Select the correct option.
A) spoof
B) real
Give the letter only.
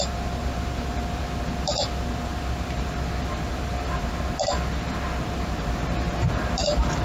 B